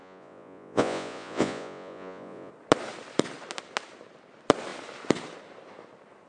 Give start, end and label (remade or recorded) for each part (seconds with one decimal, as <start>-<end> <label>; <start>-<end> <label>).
0.0-2.5 remade; 2.5-6.3 recorded